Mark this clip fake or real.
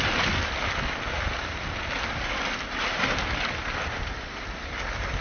real